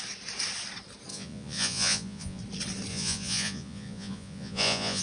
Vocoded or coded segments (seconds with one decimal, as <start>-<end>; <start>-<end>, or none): 1.1-2.4; 2.9-5.0